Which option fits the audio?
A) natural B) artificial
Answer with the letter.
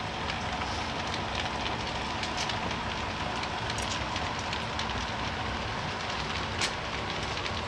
A